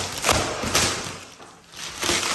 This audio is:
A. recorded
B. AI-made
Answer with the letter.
A